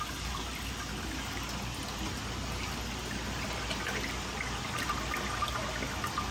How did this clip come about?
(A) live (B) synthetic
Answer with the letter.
A